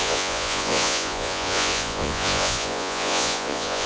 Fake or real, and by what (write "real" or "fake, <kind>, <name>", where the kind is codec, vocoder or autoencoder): fake, vocoder, Vocos